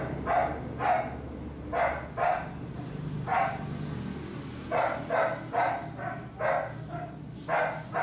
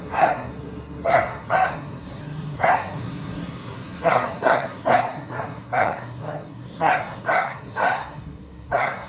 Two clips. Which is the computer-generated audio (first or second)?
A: second